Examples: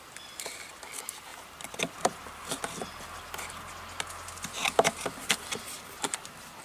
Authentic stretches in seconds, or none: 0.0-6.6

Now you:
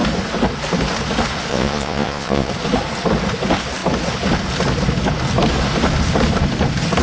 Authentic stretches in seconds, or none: 0.0-1.5; 2.5-7.0

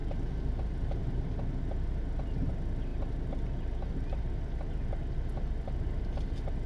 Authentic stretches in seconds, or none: 0.0-6.7

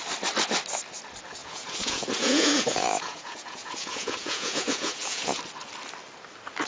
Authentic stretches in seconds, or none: 0.0-1.4; 5.4-6.7

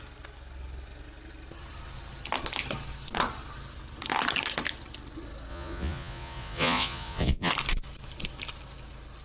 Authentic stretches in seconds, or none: 0.0-5.5; 7.5-9.2

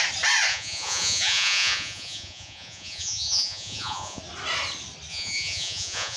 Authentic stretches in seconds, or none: 0.0-0.5; 4.2-5.1

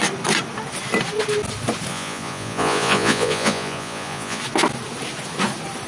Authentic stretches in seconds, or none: 0.0-1.9; 4.4-5.9